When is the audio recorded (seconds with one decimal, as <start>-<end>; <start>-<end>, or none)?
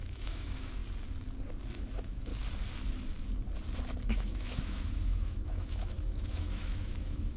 0.8-1.8; 2.3-4.1